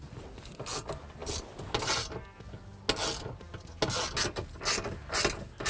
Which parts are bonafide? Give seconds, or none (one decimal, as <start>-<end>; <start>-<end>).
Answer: 0.0-5.7